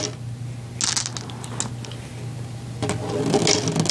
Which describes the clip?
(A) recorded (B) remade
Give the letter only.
A